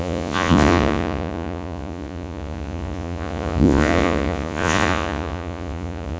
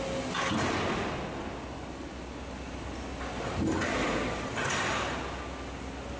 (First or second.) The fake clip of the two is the first